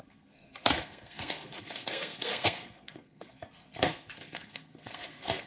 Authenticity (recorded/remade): remade